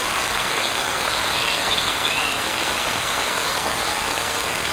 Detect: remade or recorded remade